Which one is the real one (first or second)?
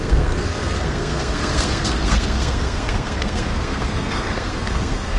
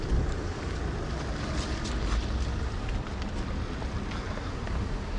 second